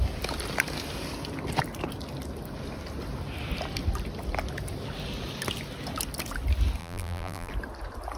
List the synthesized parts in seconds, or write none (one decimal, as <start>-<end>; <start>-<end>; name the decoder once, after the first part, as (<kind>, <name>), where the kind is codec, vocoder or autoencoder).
6.8-7.5 (vocoder, BigVGAN v2)